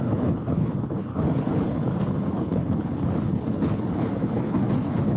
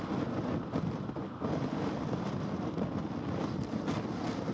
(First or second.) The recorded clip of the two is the second